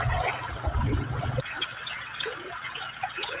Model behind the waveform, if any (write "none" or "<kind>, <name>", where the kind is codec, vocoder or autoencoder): vocoder, WaveNeXt